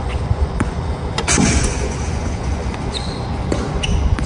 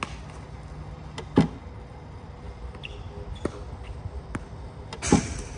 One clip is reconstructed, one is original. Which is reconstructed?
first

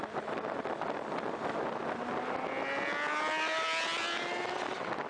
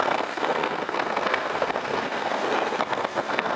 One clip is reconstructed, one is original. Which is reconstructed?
second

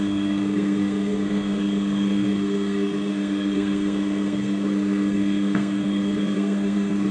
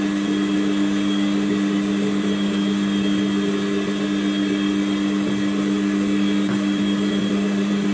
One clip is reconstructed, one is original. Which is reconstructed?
first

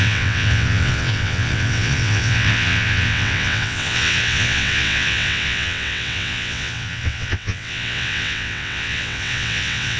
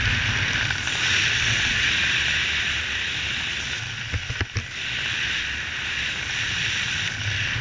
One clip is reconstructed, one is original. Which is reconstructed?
first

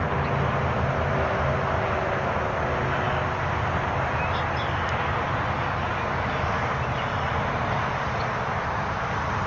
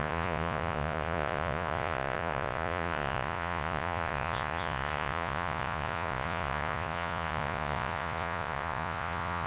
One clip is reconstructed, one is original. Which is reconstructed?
second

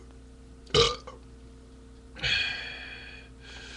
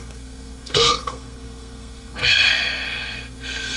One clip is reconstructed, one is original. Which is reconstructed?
second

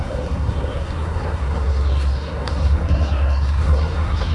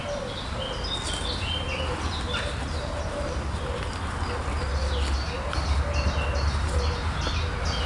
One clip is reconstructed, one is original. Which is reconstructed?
first